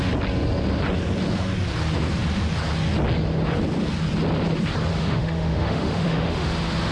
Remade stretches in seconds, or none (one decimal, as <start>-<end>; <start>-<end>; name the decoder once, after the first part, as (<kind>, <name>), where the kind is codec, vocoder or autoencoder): 4.9-6.5 (autoencoder, DAC-VAE)